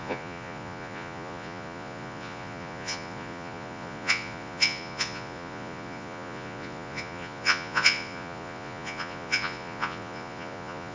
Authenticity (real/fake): fake